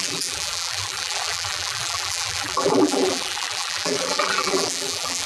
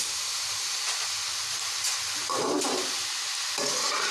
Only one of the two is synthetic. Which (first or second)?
first